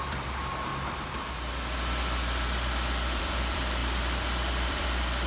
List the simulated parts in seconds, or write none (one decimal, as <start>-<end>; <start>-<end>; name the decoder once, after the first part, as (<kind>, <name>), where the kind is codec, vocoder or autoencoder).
0.0-0.7 (vocoder, BigVGAN v2); 3.2-5.3